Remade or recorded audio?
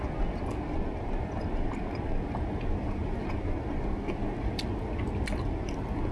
recorded